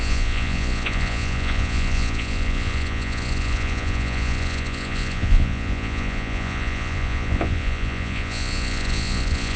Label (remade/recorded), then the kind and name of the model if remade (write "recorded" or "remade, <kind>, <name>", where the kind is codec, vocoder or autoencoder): remade, vocoder, Vocos